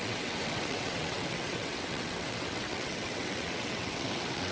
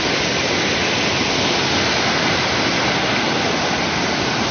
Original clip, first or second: second